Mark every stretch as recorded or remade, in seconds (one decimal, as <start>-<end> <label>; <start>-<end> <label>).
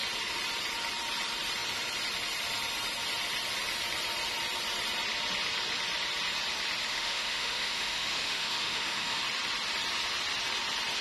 0.0-6.9 recorded; 6.9-9.2 remade; 9.2-11.0 recorded